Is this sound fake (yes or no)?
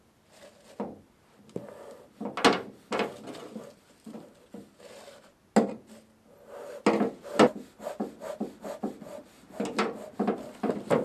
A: no